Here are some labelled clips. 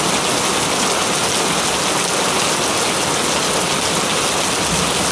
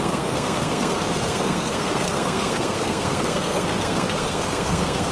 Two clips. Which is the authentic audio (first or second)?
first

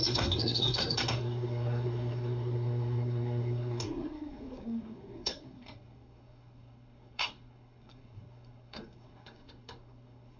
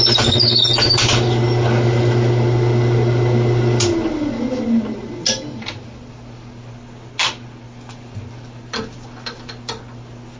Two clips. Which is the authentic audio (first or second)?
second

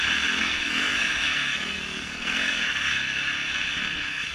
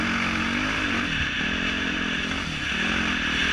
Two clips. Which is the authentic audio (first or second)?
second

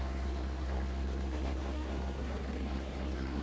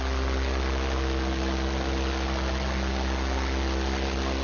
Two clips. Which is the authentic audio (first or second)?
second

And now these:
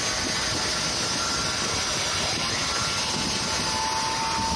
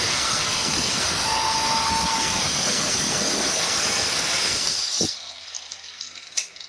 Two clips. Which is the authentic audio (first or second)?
first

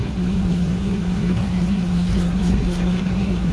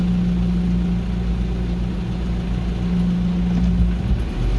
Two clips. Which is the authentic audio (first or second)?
second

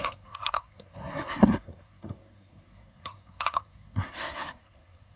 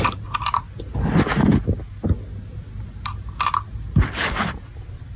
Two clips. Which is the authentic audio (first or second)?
second